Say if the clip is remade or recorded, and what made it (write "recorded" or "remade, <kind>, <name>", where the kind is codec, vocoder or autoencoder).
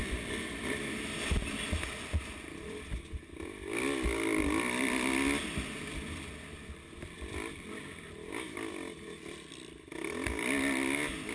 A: recorded